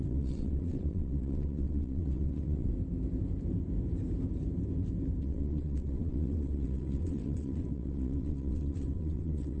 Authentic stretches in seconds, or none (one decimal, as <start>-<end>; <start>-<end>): 2.7-5.2